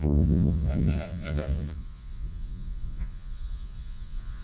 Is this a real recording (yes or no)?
no